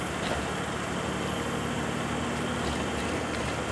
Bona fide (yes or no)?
yes